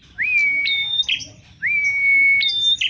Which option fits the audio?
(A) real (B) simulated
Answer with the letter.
A